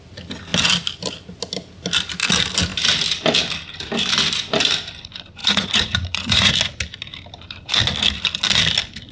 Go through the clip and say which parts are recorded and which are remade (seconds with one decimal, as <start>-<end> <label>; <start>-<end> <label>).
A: 0.0-5.4 recorded; 5.4-6.5 remade; 6.5-9.1 recorded